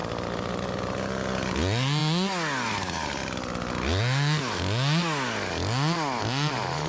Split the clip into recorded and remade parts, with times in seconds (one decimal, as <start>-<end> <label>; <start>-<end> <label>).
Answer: 0.0-6.9 recorded